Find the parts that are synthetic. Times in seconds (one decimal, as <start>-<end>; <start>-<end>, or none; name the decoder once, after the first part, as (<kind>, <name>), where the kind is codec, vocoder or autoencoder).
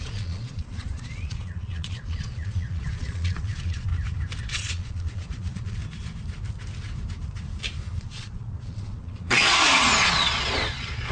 0.0-3.9 (vocoder, Vocos); 4.4-5.8; 8.0-11.1